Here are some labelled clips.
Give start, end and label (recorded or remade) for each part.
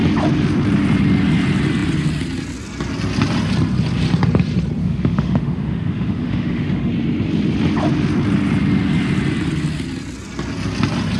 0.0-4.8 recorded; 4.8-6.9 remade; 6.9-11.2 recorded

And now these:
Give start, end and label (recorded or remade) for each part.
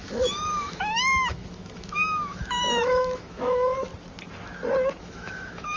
0.0-3.9 remade; 3.9-5.0 recorded; 5.0-5.8 remade